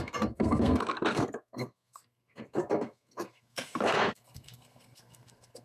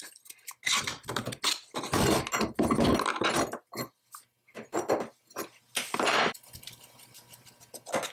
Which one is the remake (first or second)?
first